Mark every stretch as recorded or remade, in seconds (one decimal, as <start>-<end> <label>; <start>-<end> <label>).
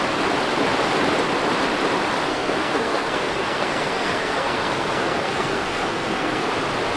0.0-2.3 recorded; 2.3-6.5 remade; 6.5-7.0 recorded